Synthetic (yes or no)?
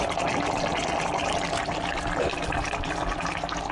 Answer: no